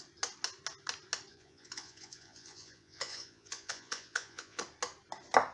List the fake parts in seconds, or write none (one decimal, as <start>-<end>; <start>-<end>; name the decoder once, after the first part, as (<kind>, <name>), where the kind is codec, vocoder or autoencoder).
1.3-4.6 (vocoder, Vocos)